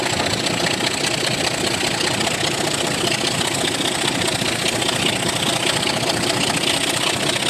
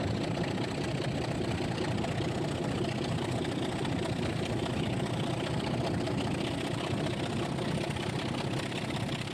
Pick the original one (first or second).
first